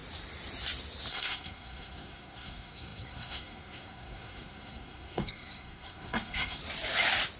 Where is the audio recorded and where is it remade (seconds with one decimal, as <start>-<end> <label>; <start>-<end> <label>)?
0.0-1.1 recorded; 1.1-6.6 remade; 6.6-7.4 recorded